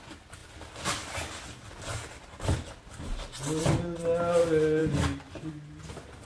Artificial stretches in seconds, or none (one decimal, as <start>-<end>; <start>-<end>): none